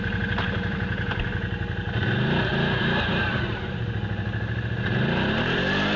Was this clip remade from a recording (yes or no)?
yes